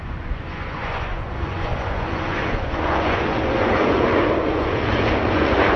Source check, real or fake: fake